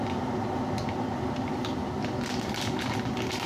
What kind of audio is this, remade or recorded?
recorded